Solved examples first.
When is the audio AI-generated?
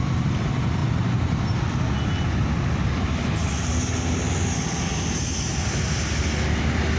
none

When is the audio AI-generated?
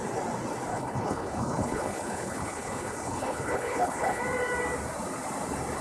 0.7-4.2 (codec, HILCodec)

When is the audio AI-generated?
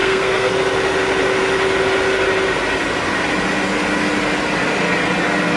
0.0-0.5 (codec, SNAC)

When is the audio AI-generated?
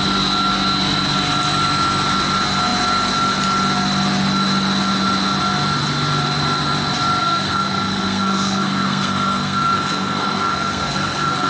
7.2-11.5 (codec, SNAC)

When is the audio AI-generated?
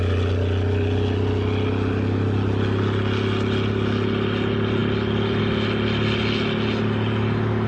none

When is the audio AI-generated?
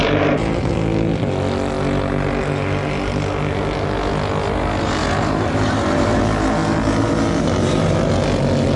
0.0-0.7 (vocoder, BigVGAN v2); 5.0-6.2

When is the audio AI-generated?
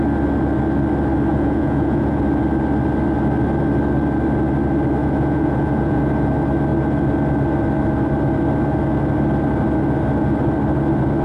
1.3-2.2 (vocoder, Vocos); 5.0-6.0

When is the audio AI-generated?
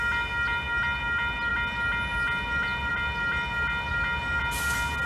none